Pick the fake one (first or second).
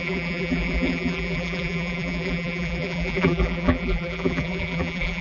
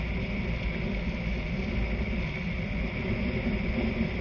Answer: first